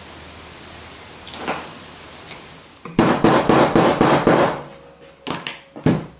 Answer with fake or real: real